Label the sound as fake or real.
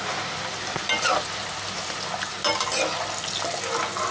real